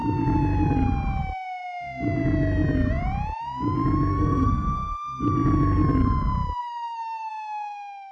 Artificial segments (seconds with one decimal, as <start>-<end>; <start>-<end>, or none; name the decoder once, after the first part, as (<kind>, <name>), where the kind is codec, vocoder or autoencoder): 4.1-5.2 (codec, SNAC); 6.6-7.3